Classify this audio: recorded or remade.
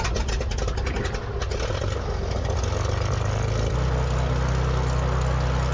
recorded